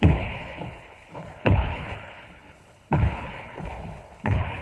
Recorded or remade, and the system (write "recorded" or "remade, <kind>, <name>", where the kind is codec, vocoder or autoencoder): remade, codec, HILCodec